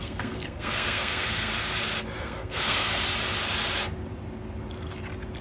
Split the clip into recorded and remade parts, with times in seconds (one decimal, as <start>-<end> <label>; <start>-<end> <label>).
0.0-1.5 remade; 1.5-2.2 recorded; 2.2-2.9 remade; 2.9-5.4 recorded